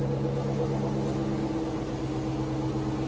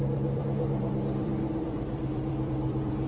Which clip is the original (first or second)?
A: first